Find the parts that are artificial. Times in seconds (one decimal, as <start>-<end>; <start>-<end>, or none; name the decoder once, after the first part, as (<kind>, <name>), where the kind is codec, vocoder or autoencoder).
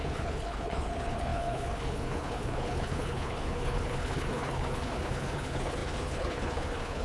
0.0-7.0 (codec, HILCodec)